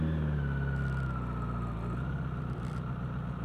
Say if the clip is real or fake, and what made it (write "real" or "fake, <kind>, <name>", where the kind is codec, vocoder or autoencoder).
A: real